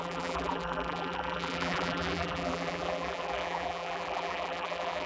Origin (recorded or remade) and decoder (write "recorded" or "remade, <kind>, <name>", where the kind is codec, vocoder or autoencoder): remade, vocoder, BigVGAN v2